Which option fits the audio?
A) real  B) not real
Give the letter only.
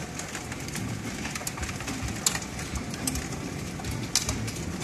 A